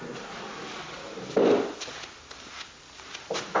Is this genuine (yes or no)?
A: yes